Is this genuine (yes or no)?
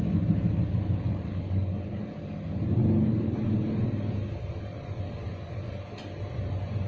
yes